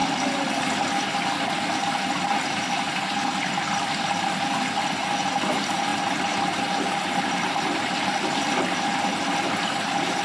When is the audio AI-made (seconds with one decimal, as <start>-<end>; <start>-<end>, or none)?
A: 1.8-4.0